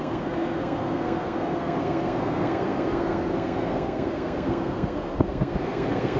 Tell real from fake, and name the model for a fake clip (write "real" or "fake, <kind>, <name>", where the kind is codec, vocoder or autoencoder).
fake, codec, SNAC